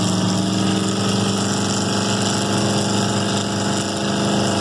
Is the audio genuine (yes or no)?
yes